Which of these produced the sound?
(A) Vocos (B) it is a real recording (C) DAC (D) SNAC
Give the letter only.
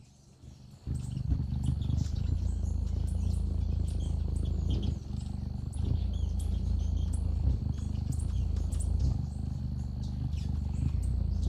B